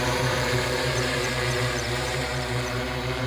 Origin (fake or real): fake